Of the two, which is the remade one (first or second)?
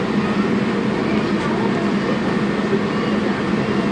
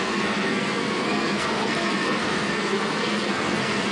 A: second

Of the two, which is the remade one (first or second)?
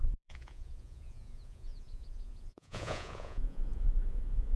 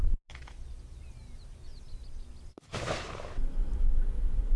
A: first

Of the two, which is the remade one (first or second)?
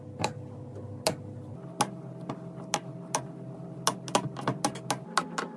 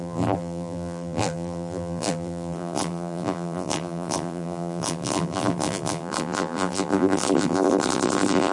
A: second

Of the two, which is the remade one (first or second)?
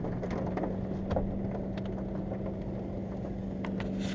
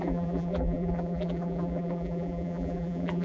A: second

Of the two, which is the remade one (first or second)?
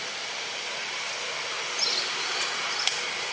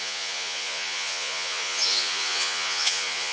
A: second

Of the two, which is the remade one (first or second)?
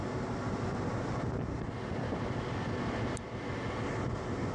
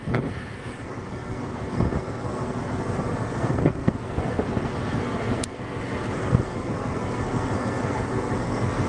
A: second